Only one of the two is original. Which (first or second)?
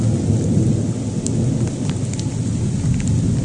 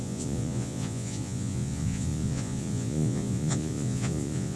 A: first